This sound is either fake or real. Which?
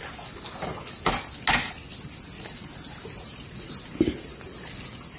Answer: real